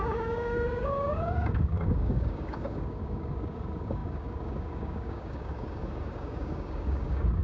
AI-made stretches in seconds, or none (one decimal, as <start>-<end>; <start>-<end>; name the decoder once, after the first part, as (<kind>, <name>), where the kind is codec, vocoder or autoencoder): 0.0-7.4 (codec, DAC)